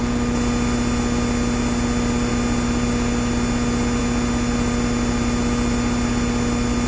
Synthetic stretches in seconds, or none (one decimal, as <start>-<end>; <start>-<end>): none